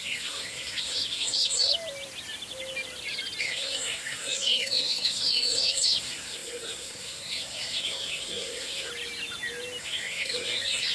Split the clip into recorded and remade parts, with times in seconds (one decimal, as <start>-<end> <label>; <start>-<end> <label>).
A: 0.0-1.7 remade; 1.7-3.4 recorded; 3.4-8.9 remade; 8.9-9.8 recorded; 9.8-10.9 remade